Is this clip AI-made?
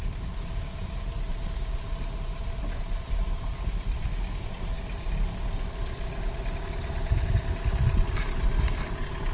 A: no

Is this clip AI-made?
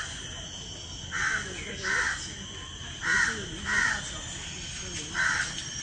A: no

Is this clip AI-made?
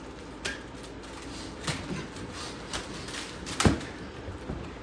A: no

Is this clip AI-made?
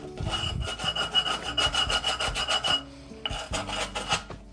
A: no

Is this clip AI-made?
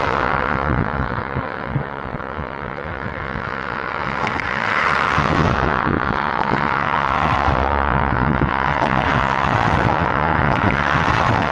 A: yes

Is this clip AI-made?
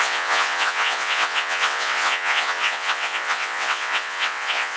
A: yes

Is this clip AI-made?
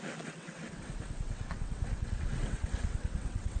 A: yes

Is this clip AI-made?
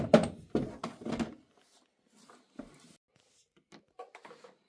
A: no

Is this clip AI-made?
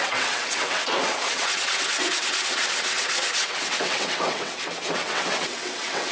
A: yes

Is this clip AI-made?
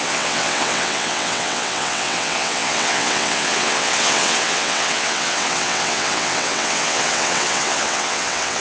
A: yes